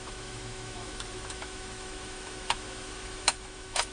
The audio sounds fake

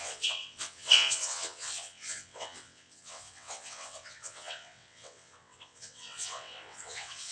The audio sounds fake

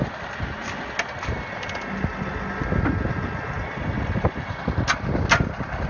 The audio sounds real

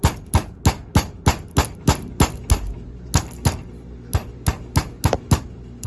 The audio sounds real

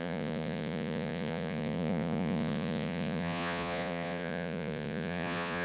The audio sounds fake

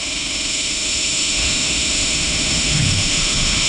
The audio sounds fake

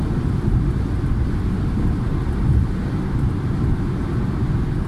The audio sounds real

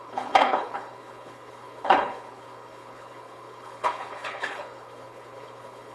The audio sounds fake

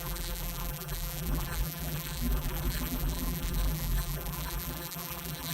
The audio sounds fake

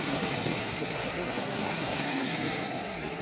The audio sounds fake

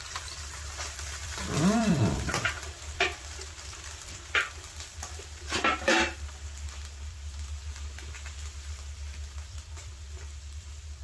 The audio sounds fake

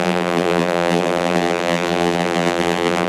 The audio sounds fake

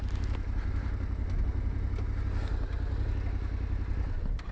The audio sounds real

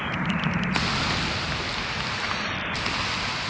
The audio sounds real